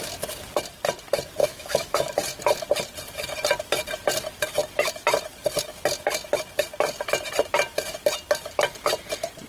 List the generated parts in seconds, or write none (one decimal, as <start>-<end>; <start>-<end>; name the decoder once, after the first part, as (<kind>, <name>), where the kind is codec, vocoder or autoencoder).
1.4-2.1 (autoencoder, DAC-VAE)